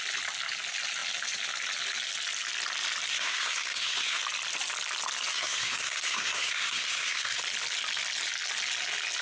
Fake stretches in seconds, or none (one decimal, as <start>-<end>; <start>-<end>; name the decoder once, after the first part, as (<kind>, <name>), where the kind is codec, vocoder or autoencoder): 3.1-4.2 (codec, SNAC); 5.3-7.4